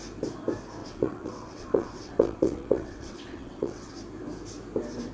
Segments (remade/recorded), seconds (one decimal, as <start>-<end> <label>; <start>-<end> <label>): 0.0-0.8 recorded; 0.8-3.9 remade; 3.9-5.1 recorded